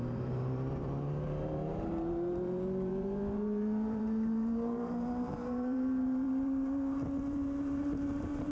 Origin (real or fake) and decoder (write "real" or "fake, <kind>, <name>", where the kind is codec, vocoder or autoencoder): fake, vocoder, BigVGAN v2